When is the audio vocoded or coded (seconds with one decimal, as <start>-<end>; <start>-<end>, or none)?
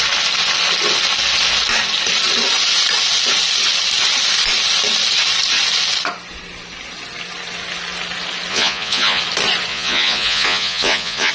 8.5-9.2; 9.7-11.3